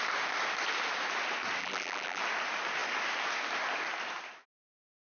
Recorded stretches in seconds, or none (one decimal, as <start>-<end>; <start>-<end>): 0.0-1.6; 2.2-5.1